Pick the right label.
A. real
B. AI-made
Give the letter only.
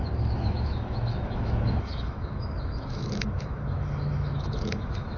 B